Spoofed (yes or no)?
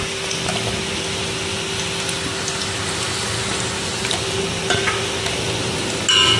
no